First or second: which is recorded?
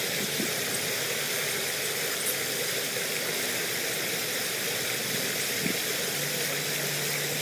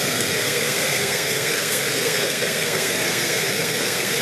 first